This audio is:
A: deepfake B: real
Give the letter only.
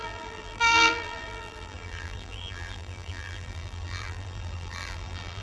A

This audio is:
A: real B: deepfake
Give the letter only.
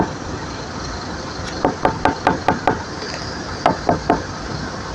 A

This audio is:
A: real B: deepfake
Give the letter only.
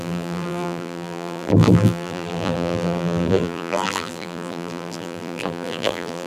B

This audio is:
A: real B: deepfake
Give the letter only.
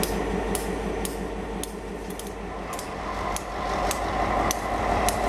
A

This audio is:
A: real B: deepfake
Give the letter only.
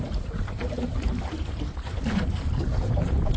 B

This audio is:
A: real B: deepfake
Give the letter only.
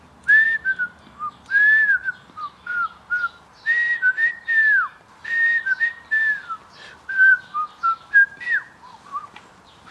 A